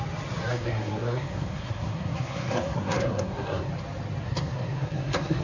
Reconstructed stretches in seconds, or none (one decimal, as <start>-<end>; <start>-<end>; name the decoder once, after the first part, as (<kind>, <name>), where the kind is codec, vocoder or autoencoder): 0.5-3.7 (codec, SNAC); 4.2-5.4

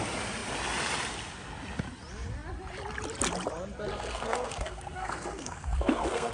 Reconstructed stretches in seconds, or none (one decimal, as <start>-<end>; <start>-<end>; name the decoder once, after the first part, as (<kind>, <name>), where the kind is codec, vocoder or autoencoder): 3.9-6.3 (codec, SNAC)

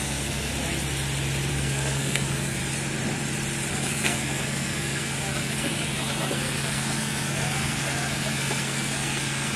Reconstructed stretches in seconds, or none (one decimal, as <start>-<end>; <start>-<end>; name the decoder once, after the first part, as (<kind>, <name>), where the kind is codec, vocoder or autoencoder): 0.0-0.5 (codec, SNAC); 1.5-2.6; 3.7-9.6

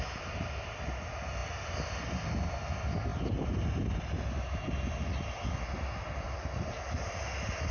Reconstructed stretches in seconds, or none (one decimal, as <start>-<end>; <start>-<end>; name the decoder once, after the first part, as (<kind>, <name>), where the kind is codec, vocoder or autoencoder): none

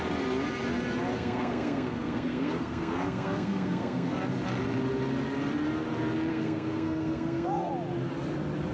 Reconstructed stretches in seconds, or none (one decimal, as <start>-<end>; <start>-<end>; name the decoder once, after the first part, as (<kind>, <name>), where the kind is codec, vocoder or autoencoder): 1.1-4.2 (codec, SNAC); 6.3-7.7

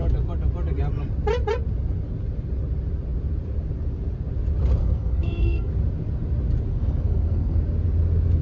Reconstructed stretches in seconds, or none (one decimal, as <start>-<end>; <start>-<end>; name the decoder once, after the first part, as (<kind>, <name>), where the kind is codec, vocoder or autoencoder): 4.8-5.7 (codec, SNAC); 6.7-7.6

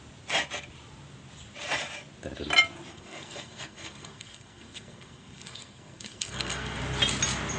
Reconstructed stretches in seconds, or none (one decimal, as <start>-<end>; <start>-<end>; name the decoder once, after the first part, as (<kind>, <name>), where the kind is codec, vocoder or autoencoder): 2.9-6.8 (codec, SNAC)